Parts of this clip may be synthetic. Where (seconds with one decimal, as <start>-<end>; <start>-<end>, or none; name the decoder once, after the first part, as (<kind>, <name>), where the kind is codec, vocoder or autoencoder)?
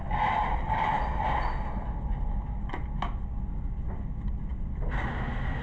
0.0-2.4 (vocoder, BigVGAN v2); 4.5-5.6